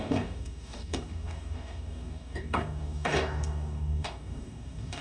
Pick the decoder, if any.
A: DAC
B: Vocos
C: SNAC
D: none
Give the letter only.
A